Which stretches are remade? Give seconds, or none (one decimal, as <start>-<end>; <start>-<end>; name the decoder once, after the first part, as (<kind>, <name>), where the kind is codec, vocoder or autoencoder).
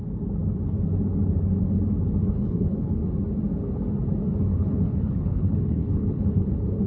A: 2.2-3.0 (codec, HILCodec); 4.5-6.9